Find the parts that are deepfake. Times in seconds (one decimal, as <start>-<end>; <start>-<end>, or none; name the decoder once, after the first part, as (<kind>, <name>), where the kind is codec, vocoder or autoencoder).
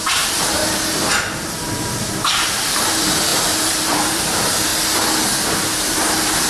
0.0-0.6 (vocoder, BigVGAN v2); 1.2-4.7; 5.5-6.5